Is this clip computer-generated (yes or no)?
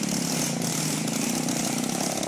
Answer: no